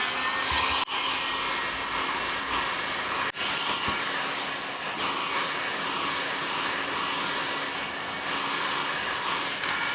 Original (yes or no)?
yes